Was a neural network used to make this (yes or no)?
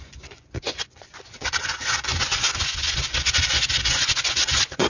yes